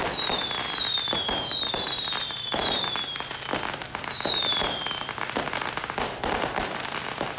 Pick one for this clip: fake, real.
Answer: real